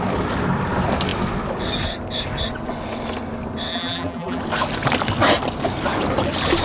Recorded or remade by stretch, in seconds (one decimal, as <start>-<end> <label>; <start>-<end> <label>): 0.0-3.7 recorded; 3.7-4.4 remade; 4.4-6.6 recorded